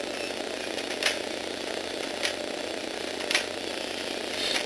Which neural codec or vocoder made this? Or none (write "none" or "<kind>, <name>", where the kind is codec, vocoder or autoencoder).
vocoder, BigVGAN v2